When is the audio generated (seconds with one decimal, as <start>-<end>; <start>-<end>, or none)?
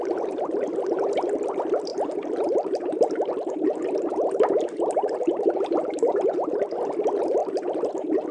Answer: 0.0-8.3